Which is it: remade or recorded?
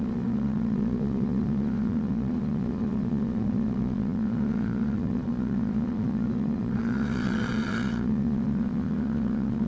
remade